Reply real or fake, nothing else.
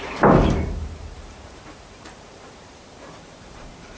fake